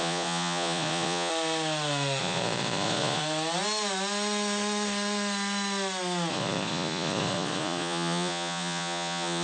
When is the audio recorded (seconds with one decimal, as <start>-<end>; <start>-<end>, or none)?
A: 1.3-2.2; 3.2-6.3